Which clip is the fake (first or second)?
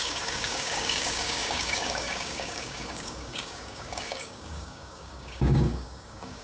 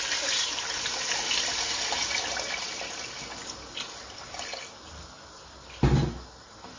first